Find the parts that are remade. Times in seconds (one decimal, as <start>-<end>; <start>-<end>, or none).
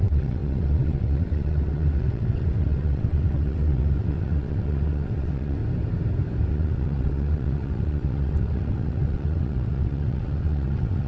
0.0-5.6; 6.5-11.1